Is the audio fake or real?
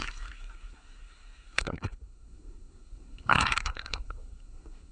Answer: fake